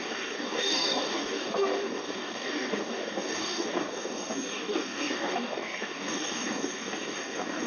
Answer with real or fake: fake